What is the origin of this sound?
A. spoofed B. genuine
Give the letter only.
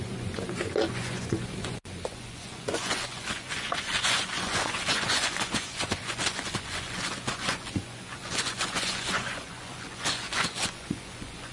A